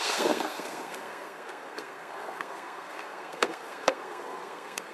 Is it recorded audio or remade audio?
remade